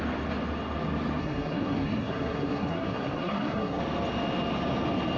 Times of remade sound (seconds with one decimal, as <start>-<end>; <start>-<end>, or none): 1.2-3.8